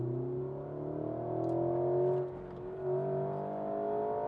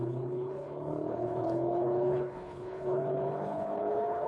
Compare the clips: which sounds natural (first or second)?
first